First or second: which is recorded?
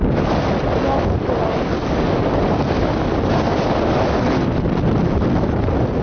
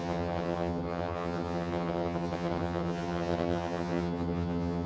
first